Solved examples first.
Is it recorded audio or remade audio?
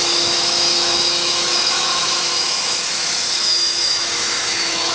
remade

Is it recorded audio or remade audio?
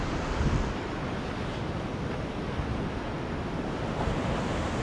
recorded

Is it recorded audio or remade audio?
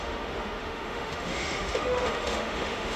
remade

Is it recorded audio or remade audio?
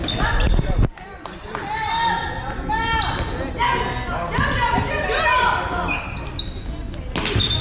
recorded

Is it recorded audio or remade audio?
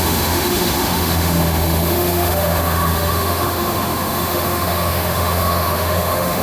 remade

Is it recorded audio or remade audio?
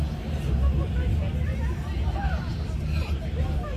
recorded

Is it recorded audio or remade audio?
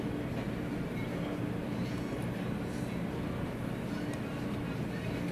recorded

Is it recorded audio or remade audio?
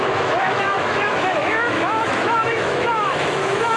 remade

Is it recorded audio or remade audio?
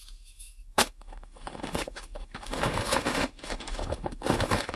remade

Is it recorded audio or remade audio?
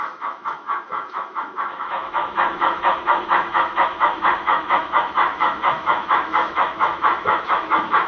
remade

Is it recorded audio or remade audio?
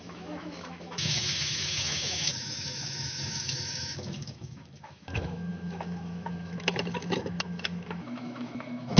remade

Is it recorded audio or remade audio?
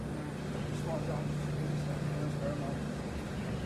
recorded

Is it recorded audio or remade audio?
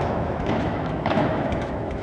remade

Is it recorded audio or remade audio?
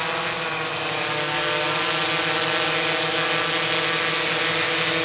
recorded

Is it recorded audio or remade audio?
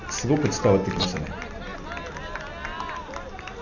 recorded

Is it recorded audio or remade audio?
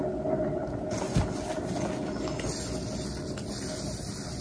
recorded